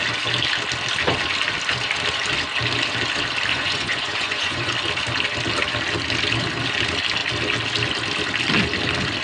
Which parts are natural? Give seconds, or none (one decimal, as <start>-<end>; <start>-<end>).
0.0-3.5; 4.7-9.2